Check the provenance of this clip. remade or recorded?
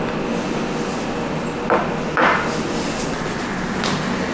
recorded